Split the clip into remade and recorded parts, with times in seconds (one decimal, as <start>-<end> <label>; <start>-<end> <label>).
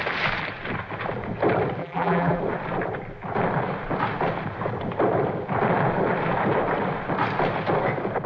0.0-1.8 recorded; 1.8-2.4 remade; 2.4-8.3 recorded